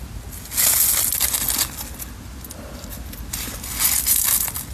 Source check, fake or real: real